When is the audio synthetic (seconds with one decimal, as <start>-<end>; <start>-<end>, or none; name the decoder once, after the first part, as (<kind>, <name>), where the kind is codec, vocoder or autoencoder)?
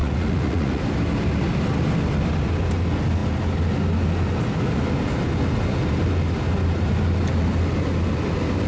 0.0-0.8 (vocoder, Vocos)